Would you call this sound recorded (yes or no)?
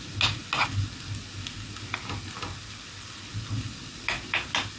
yes